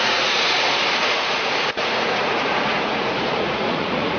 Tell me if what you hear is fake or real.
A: fake